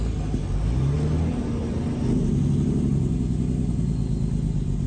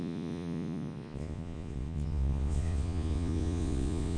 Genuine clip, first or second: first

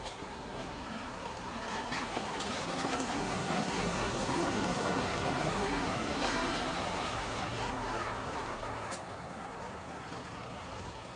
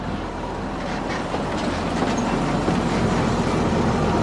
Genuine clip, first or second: second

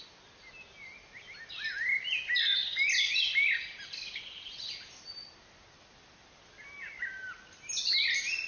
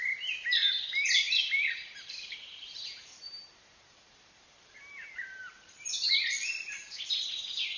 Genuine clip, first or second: first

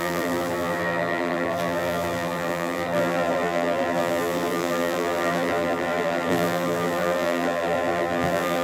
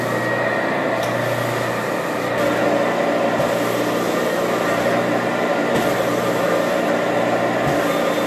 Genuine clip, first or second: second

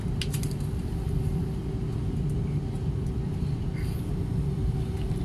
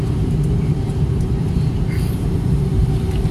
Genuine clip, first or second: first